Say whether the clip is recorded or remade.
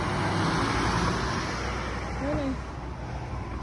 recorded